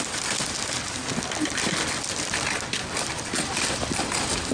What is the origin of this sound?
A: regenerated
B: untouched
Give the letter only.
B